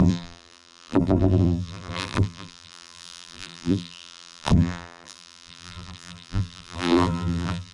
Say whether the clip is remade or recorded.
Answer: remade